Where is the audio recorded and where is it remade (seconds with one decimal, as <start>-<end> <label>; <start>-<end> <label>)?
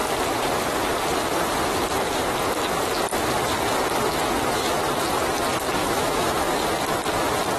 0.0-5.8 recorded; 5.8-6.5 remade; 6.5-7.6 recorded